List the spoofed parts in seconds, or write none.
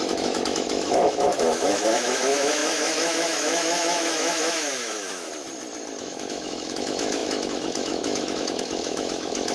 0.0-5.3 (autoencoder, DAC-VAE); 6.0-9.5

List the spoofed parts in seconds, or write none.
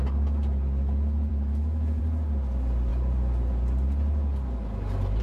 1.3-2.0 (autoencoder, DAC-VAE)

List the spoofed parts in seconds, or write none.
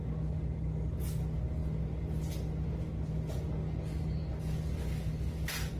none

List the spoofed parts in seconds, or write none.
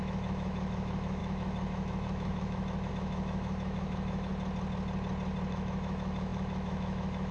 0.0-4.3 (autoencoder, DAC-VAE); 5.5-7.3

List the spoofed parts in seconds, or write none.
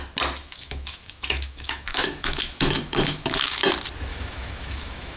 0.4-3.5 (autoencoder, DAC-VAE); 4.1-5.2